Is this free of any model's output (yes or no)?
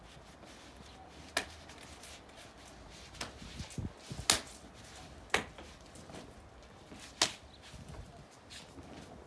yes